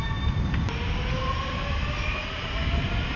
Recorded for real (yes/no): yes